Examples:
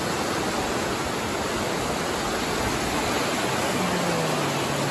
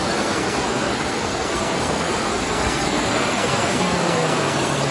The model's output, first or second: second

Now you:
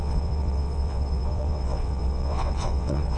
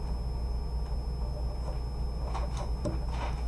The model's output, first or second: first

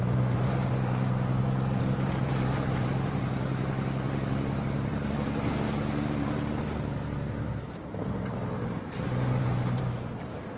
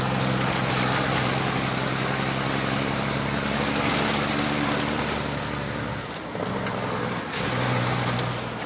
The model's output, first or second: first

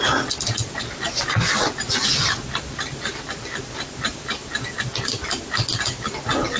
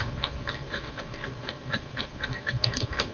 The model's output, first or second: second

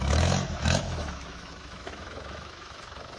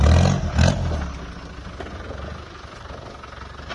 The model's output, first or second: first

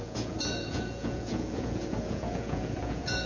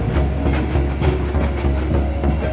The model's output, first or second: first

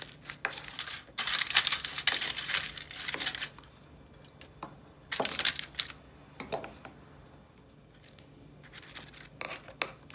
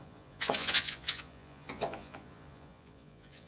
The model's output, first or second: second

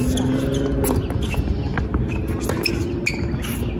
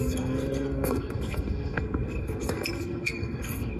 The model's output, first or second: second